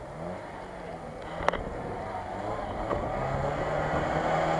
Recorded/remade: recorded